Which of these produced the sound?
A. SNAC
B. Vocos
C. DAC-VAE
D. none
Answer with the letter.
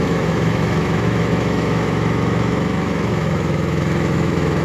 C